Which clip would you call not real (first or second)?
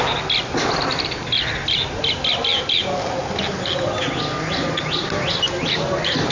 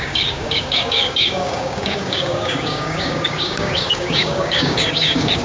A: second